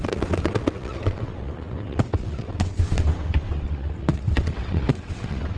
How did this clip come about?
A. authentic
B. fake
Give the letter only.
B